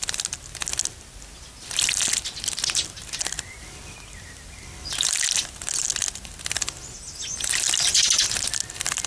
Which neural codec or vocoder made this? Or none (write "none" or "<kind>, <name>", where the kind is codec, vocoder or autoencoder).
none